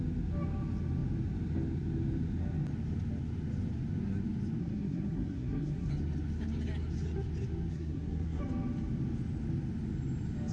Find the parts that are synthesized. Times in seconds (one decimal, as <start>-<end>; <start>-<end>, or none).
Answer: 4.6-5.9; 7.7-8.4

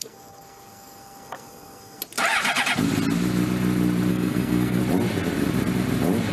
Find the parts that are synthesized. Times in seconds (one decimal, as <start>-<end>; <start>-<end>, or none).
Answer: 0.0-2.0; 4.1-4.8